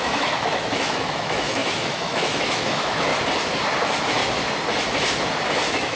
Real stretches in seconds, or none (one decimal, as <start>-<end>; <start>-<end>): 3.1-3.8; 4.2-5.5